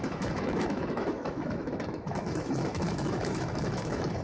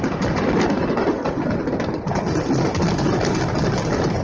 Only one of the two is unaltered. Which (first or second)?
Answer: second